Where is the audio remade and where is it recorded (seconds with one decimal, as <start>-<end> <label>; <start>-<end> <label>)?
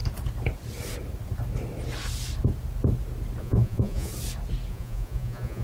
0.0-3.4 recorded; 3.4-4.1 remade; 4.1-4.7 recorded; 4.7-5.6 remade